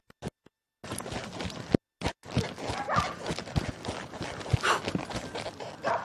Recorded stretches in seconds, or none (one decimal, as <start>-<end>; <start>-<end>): 0.0-6.0